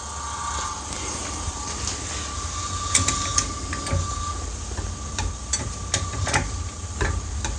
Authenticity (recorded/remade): remade